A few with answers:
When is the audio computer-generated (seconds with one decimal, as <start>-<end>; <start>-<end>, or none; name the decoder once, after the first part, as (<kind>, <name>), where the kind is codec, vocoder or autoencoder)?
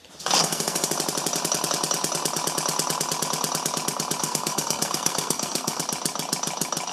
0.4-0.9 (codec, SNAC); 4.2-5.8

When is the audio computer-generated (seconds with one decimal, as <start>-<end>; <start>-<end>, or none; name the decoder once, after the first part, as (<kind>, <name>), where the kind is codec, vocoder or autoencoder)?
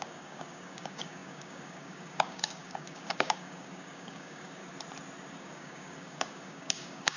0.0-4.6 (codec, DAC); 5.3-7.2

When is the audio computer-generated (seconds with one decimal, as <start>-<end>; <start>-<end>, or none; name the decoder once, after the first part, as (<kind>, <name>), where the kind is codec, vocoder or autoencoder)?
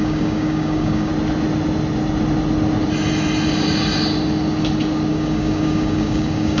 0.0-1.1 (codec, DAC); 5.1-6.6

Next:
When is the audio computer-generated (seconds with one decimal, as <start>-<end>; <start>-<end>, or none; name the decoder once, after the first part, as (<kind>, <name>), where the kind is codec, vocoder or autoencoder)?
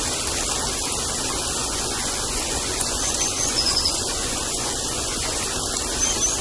1.6-5.4 (vocoder, Vocos)